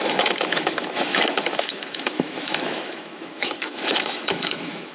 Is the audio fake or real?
fake